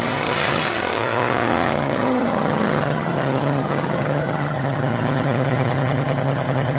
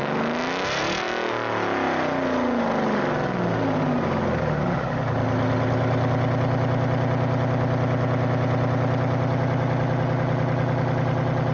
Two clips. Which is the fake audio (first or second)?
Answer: first